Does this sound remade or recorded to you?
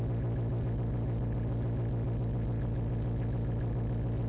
recorded